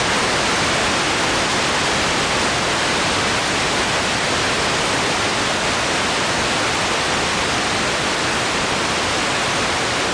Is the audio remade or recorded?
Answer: recorded